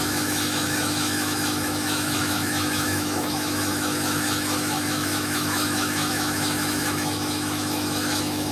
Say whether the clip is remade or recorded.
remade